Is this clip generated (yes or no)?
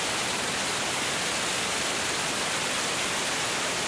no